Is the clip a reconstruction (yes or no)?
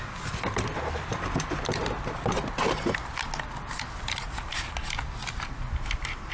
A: no